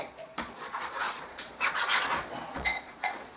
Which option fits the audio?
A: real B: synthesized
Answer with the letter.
B